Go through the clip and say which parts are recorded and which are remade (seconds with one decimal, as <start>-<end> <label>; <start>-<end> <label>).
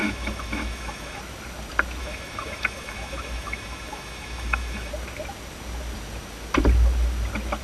0.0-1.2 remade; 1.2-2.0 recorded; 2.0-4.9 remade; 4.9-7.6 recorded